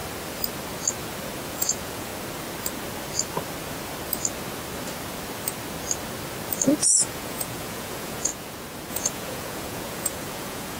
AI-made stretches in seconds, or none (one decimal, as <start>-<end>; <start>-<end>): 1.5-2.1; 6.8-8.3; 8.9-10.8